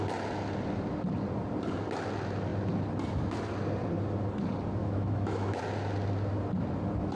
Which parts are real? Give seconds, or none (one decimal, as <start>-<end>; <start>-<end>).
0.0-4.8; 5.6-7.1